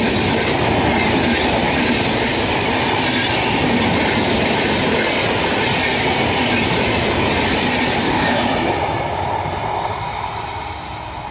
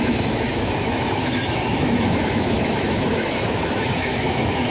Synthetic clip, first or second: second